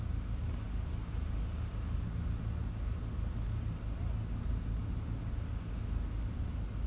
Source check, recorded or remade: recorded